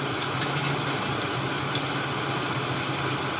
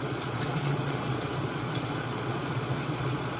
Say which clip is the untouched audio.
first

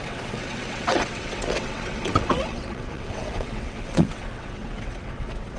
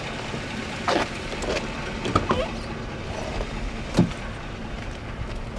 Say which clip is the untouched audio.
second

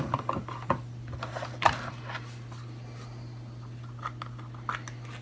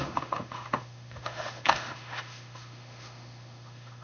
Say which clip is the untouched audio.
first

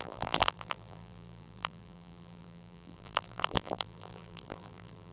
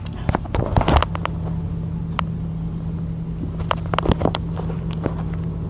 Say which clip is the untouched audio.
second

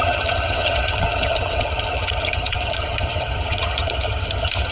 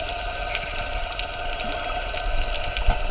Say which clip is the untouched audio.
second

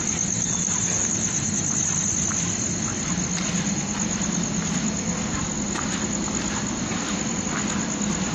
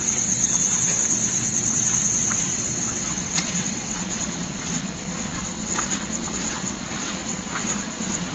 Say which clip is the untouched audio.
first